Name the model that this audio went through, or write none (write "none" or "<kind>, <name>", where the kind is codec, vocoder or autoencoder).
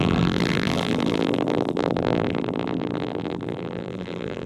vocoder, BigVGAN v2